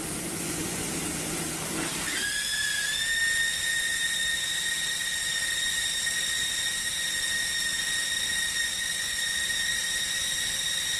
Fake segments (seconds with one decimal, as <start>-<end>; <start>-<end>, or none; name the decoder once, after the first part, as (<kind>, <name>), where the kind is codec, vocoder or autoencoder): 0.0-0.9 (vocoder, Vocos); 8.6-9.4